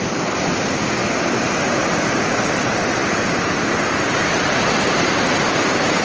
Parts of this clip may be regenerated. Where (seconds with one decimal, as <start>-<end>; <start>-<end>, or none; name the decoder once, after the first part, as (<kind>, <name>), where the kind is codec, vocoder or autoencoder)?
none